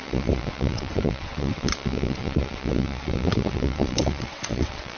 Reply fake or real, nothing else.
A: fake